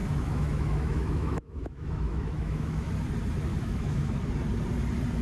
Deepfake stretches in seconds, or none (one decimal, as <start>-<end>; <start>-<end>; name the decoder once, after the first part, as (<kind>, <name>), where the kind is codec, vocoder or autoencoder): 0.0-2.9 (autoencoder, DAC-VAE); 3.5-4.2